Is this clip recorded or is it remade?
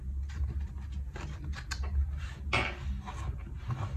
recorded